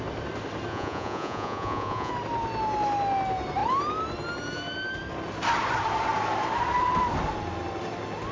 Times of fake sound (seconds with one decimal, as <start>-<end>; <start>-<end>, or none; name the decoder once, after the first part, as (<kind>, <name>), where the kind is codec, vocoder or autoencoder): 0.7-2.1 (vocoder, Vocos)